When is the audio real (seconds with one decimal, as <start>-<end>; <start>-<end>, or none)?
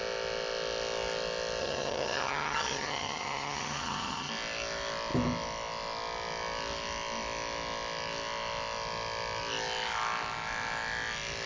0.0-1.6; 4.3-11.5